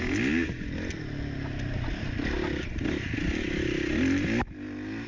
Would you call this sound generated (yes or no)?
no